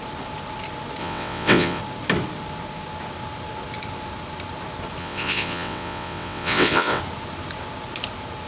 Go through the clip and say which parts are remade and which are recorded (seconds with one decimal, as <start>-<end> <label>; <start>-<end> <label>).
0.0-1.0 recorded; 1.0-1.8 remade; 1.8-5.0 recorded; 5.0-7.0 remade; 7.0-8.5 recorded